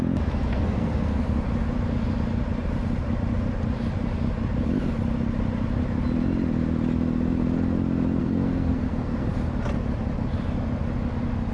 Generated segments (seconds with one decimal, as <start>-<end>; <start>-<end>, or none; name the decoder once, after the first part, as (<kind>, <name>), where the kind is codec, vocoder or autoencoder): 0.5-1.2 (codec, SNAC); 8.2-9.3